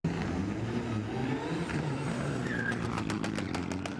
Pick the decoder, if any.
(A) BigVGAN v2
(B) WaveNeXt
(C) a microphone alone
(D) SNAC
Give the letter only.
C